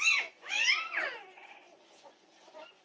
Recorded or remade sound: remade